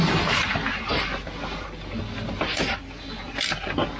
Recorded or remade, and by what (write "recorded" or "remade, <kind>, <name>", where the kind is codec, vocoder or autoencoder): recorded